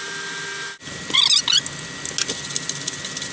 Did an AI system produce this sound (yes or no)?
no